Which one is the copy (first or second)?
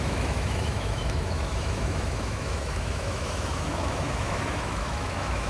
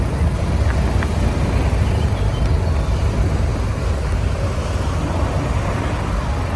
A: first